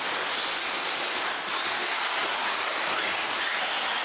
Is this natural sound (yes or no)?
yes